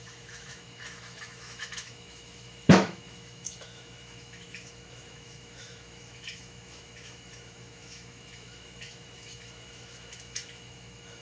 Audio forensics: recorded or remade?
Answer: remade